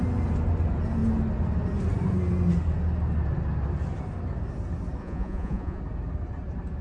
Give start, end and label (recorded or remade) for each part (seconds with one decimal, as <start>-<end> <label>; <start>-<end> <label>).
0.0-5.0 recorded; 5.0-5.8 remade; 5.8-6.8 recorded